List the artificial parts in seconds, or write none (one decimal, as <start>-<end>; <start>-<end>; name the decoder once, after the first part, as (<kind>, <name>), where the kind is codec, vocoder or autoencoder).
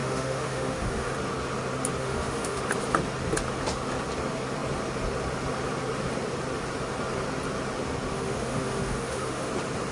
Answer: 0.0-1.1 (autoencoder, DAC-VAE); 2.0-2.6; 8.1-9.5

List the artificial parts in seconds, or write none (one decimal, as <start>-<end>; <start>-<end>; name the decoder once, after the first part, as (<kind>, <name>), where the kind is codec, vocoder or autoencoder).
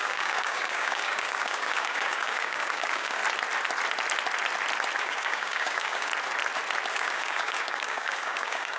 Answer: 0.0-3.2 (codec, DAC); 5.0-6.1; 6.9-8.8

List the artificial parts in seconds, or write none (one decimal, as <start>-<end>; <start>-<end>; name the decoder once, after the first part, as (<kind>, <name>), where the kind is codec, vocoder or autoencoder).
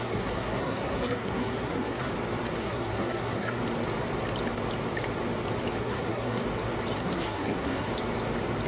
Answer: 0.0-2.1 (codec, SNAC); 2.6-3.6; 5.8-6.4; 7.0-7.9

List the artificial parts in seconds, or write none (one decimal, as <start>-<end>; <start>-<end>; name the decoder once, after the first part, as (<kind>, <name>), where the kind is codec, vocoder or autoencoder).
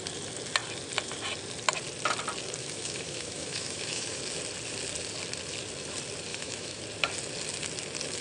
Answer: 2.6-4.2 (autoencoder, DAC-VAE); 6.3-6.8